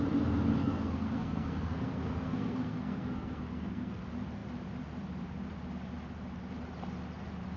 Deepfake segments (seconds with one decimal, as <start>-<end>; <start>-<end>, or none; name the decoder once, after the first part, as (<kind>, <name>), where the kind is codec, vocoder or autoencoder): 0.6-4.0 (codec, SNAC)